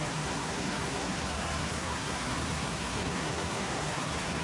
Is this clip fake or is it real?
fake